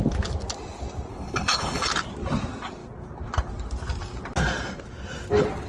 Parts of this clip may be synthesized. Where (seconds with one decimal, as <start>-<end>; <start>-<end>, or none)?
1.1-1.9